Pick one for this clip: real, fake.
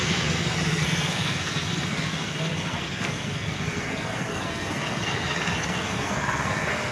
fake